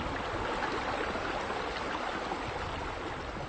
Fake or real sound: real